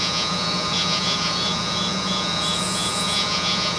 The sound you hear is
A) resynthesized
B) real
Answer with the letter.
A